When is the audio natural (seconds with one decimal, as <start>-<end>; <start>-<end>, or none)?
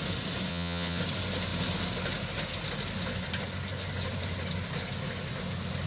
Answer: 0.0-0.5; 1.0-5.9